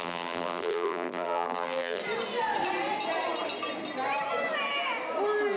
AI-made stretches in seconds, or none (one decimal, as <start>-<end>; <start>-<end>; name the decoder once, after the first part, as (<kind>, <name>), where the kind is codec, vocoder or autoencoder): 0.0-2.0 (vocoder, BigVGAN v2)